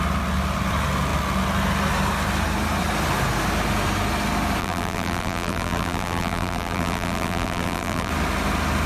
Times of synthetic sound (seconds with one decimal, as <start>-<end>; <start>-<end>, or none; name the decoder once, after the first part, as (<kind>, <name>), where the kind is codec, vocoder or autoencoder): 4.6-8.1 (vocoder, BigVGAN v2)